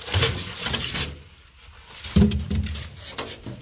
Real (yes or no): yes